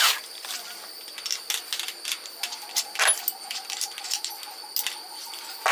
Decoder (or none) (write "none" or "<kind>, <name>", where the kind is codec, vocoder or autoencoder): none